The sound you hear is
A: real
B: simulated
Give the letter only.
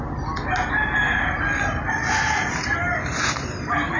A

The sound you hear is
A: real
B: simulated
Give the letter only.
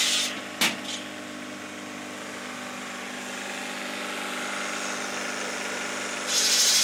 A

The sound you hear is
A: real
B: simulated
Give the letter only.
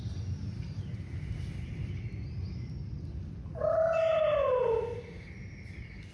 A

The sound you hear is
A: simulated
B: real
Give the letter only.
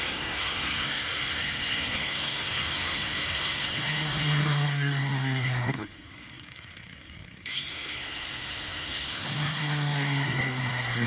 A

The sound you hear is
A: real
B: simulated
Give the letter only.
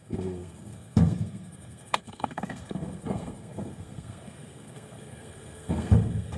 B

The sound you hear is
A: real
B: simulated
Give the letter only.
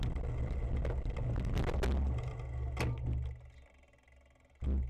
A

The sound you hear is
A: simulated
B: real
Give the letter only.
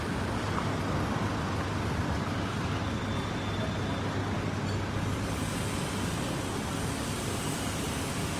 B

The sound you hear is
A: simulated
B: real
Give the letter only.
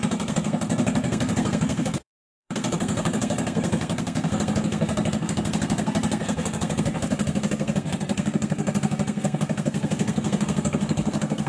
A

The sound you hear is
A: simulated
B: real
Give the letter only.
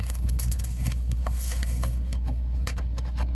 A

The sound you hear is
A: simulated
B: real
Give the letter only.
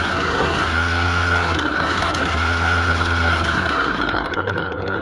A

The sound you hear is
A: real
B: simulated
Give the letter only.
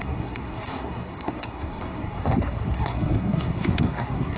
B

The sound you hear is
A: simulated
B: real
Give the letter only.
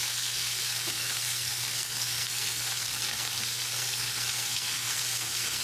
A